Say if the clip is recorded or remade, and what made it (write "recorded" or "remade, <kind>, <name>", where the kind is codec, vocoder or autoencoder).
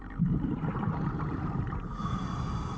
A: remade, vocoder, BigVGAN v2